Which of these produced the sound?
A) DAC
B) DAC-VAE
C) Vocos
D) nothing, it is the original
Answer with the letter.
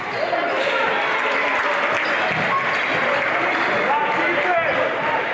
D